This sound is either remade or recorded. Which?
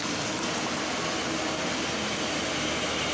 recorded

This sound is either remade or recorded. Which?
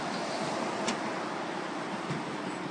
recorded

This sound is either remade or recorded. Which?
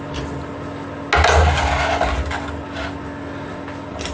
recorded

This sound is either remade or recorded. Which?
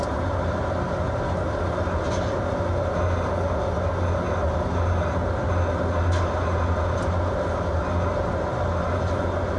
recorded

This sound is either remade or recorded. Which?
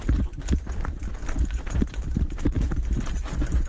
remade